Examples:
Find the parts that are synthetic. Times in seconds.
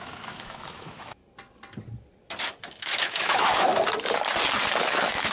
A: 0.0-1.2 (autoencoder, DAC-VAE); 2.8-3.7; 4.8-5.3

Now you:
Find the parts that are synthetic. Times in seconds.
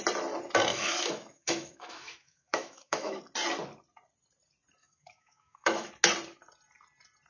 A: 0.7-3.2 (autoencoder, DAC-VAE); 4.8-5.9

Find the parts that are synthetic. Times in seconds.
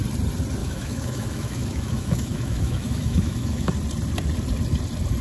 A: 0.6-3.7 (autoencoder, DAC-VAE)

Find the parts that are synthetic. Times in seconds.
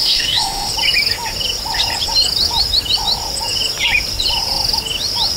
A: 0.0-0.7 (autoencoder, DAC-VAE)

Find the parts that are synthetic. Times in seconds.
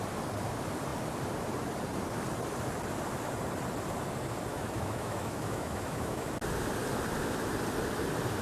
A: 4.5-6.3 (autoencoder, DAC-VAE)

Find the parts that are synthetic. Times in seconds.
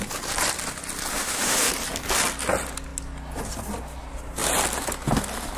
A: 1.1-1.7 (autoencoder, DAC-VAE)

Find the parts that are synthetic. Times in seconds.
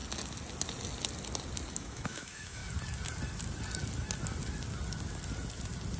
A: 1.7-2.6 (autoencoder, DAC-VAE)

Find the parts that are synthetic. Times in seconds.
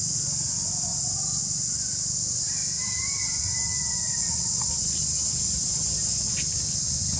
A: none